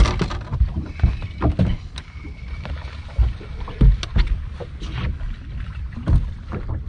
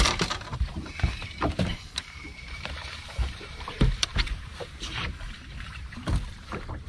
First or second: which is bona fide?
first